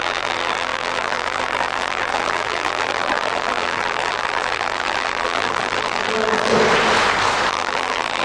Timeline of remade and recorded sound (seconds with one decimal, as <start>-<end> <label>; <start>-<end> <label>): 0.0-6.5 remade; 6.5-7.5 recorded; 7.5-8.2 remade